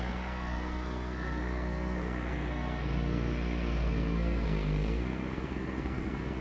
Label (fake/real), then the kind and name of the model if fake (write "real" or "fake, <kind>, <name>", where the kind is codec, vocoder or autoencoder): fake, codec, SNAC